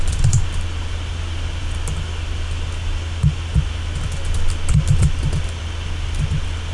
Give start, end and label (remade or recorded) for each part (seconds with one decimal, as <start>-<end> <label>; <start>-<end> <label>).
0.0-6.7 recorded